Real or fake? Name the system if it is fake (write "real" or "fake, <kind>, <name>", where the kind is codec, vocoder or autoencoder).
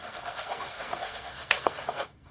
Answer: fake, codec, SNAC